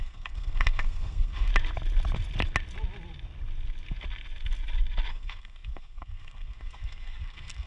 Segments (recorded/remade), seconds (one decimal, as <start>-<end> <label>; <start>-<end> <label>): 0.0-1.5 remade; 1.5-5.1 recorded; 5.1-7.7 remade